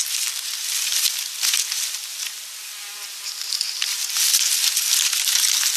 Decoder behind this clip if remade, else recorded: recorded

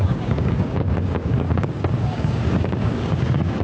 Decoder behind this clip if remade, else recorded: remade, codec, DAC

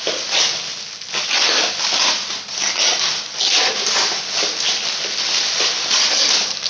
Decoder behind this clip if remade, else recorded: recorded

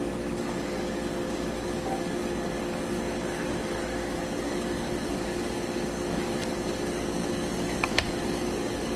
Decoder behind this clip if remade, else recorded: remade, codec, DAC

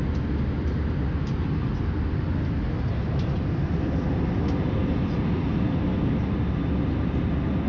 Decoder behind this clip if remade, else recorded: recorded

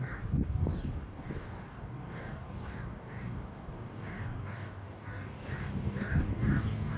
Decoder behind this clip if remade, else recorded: remade, codec, DAC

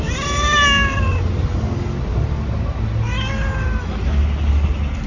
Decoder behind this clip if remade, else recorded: recorded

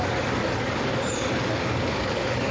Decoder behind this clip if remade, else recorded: remade, codec, DAC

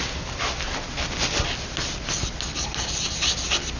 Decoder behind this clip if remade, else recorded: recorded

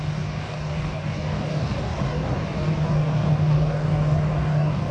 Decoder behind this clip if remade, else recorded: remade, codec, DAC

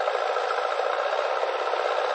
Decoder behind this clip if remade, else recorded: recorded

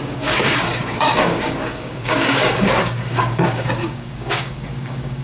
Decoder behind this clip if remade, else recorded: remade, codec, DAC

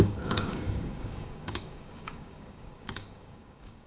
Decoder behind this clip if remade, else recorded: remade, codec, DAC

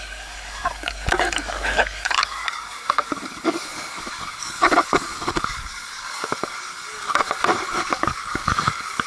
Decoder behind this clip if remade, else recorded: remade, codec, DAC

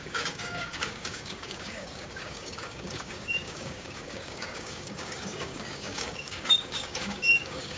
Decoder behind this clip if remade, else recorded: remade, codec, DAC